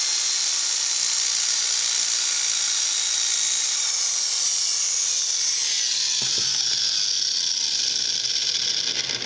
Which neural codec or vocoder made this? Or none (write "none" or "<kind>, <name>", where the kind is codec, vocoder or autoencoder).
none